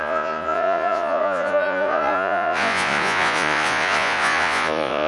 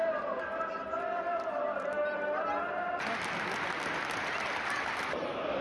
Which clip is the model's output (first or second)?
first